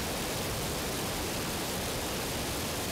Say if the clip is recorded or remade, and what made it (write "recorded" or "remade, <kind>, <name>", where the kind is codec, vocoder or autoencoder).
recorded